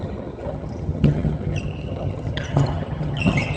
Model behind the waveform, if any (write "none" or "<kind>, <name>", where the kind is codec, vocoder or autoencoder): vocoder, HiFi-GAN